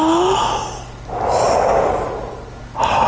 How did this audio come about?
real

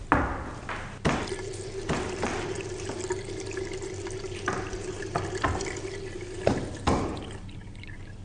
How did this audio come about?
real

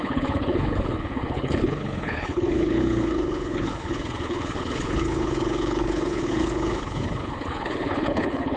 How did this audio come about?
fake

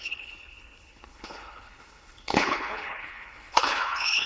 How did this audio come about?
fake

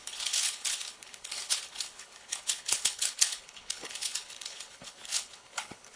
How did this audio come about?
fake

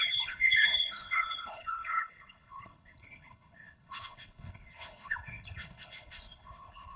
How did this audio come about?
fake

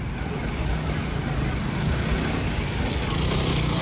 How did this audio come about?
real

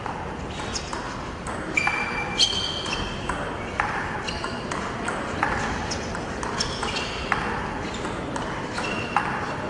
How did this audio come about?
real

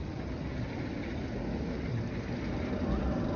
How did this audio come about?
real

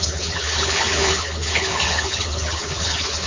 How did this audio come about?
fake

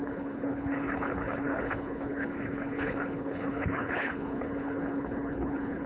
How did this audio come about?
fake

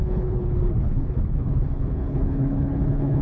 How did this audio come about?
fake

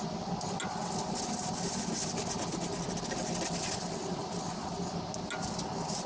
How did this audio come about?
real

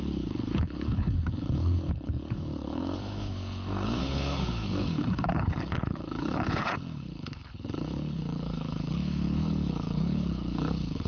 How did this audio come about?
fake